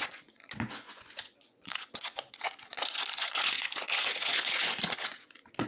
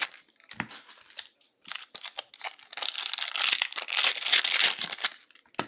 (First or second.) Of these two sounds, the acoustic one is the second